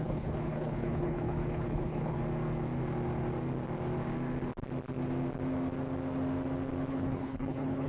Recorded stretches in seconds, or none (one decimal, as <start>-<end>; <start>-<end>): 2.2-6.9